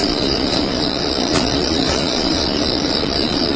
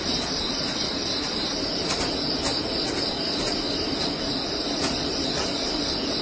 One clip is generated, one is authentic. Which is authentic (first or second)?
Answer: second